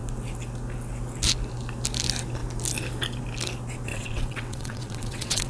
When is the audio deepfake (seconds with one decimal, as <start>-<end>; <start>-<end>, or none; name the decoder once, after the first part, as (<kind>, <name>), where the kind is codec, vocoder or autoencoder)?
3.9-5.5 (vocoder, WaveNeXt)